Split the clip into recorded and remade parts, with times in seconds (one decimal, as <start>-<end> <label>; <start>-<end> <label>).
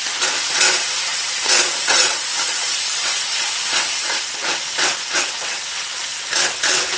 0.0-0.5 recorded; 0.5-7.0 remade